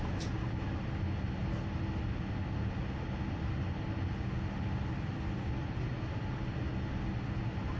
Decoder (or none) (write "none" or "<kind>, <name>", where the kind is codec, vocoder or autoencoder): none